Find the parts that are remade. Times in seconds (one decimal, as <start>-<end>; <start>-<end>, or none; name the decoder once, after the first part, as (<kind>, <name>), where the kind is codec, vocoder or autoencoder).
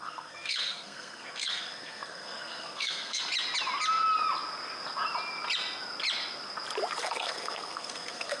0.0-3.2 (codec, SNAC); 7.0-8.4